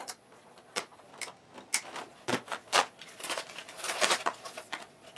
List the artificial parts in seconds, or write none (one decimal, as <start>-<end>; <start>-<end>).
0.0-1.1; 2.0-5.2